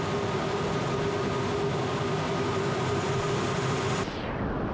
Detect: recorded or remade recorded